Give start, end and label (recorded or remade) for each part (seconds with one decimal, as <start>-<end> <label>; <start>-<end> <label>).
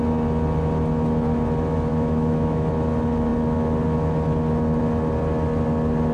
0.0-1.9 recorded; 1.9-2.7 remade; 2.7-6.1 recorded